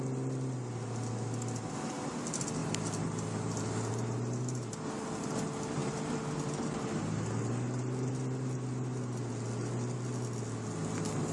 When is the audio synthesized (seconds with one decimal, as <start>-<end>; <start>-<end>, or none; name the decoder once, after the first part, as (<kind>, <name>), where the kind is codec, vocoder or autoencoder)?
none